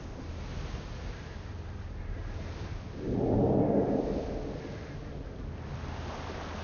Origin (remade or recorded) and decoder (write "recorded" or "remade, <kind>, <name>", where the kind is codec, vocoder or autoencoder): recorded